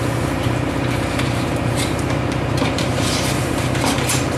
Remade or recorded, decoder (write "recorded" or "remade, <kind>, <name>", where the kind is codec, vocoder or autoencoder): remade, vocoder, BigVGAN v2